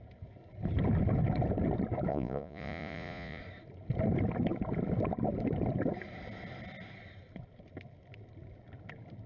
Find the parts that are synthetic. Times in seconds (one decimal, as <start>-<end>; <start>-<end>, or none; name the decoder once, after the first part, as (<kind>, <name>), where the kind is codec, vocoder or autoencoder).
2.1-3.4 (vocoder, Vocos)